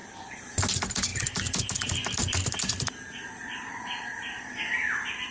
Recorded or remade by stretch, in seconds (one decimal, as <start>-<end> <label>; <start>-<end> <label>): 0.0-0.7 remade; 0.7-5.3 recorded